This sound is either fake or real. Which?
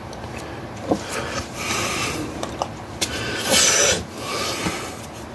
fake